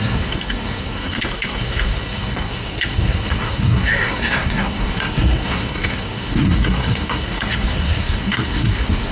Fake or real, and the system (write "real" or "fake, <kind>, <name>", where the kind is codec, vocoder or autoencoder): fake, codec, SNAC